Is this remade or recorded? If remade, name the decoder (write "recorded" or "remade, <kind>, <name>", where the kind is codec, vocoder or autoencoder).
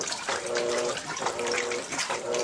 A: remade, vocoder, BigVGAN v2